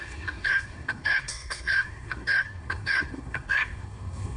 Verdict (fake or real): fake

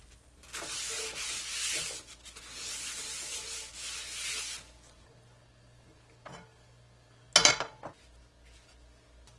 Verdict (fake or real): real